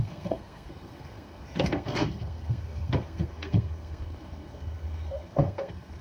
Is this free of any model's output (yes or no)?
no